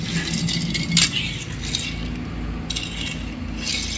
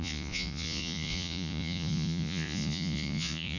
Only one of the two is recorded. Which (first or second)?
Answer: first